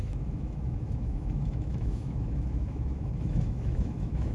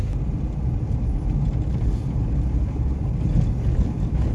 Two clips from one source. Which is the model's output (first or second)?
first